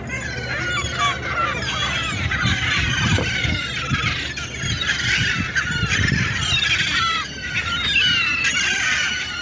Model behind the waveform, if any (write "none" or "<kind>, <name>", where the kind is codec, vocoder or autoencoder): none